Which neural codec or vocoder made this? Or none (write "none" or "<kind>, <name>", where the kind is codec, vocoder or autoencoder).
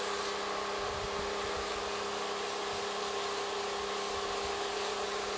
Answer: none